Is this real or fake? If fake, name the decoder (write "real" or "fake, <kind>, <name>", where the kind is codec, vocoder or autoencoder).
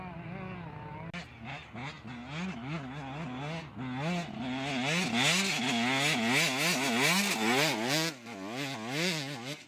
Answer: real